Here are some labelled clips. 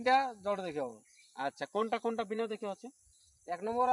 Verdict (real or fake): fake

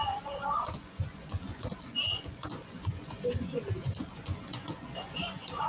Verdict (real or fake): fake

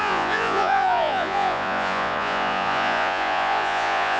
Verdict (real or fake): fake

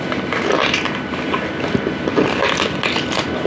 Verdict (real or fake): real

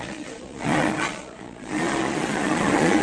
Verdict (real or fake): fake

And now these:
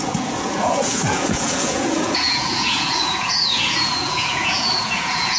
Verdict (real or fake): fake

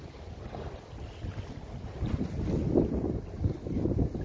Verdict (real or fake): real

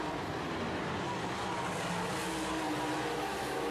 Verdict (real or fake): real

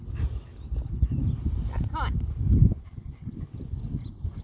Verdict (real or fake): real